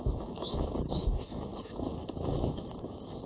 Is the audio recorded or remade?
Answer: remade